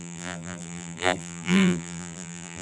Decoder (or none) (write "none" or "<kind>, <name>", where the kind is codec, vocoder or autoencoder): vocoder, BigVGAN v2